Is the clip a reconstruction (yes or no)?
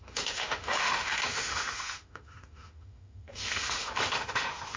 yes